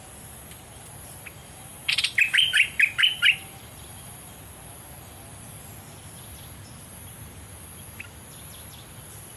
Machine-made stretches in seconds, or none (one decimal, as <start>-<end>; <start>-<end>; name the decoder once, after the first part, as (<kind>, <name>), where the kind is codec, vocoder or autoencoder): 1.4-4.4 (vocoder, BigVGAN v2)